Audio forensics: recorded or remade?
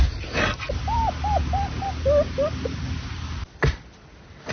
recorded